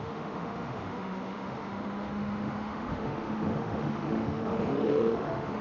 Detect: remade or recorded remade